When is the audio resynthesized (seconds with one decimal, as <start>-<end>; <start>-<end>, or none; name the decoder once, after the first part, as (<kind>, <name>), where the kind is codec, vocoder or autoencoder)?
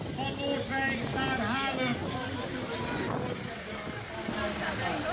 none